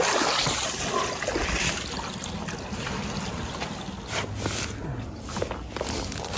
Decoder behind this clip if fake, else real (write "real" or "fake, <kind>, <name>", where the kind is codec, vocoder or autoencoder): real